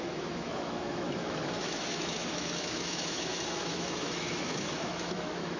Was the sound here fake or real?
fake